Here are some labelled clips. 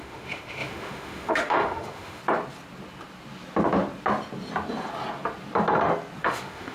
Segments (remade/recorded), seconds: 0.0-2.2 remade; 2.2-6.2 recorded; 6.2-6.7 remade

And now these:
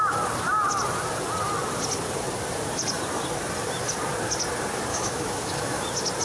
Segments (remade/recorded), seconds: 0.0-4.9 recorded; 4.9-5.8 remade; 5.8-6.2 recorded

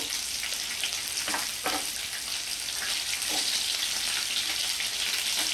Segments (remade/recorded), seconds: 0.0-5.5 recorded

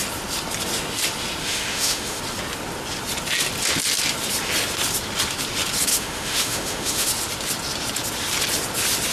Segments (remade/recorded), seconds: 0.0-1.4 recorded; 1.4-2.2 remade; 2.2-5.9 recorded; 5.9-7.1 remade; 7.1-9.1 recorded